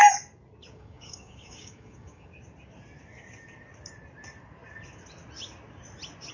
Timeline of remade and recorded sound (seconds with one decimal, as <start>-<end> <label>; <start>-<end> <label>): 0.0-0.7 recorded; 0.7-2.3 remade; 2.3-6.3 recorded